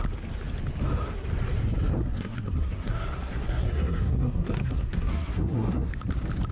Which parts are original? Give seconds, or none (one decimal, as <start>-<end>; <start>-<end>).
0.0-2.0; 5.9-6.5